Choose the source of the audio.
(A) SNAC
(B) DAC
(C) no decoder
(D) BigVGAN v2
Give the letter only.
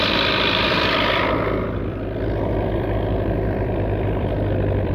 D